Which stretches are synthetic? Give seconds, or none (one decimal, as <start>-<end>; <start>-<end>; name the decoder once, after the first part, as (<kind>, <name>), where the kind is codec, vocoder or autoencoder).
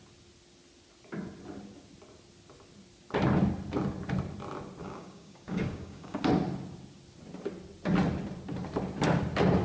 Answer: 4.8-6.2 (codec, DAC)